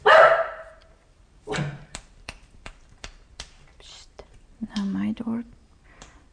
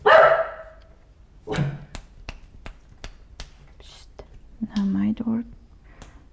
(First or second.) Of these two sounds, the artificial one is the first